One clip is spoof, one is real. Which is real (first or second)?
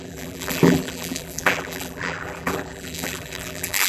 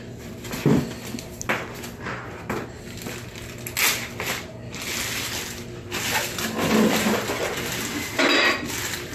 second